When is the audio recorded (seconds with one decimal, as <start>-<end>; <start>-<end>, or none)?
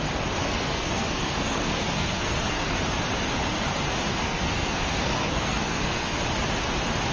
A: 0.0-0.4; 2.8-4.1; 6.2-7.1